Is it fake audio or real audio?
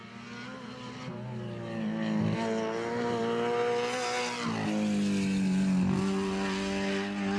real